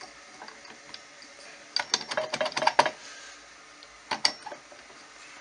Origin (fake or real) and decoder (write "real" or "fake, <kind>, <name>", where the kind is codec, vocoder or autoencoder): real